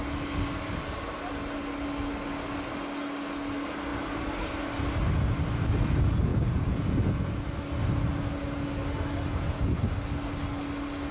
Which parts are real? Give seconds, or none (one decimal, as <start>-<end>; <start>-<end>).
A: 0.0-6.3; 7.3-9.3; 9.8-11.1